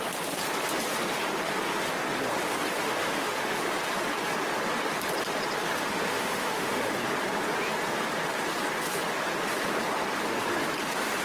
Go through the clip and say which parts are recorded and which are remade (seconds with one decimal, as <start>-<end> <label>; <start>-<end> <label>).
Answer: 0.0-2.8 recorded; 2.8-3.6 remade; 3.6-5.6 recorded; 5.6-6.8 remade; 6.8-11.2 recorded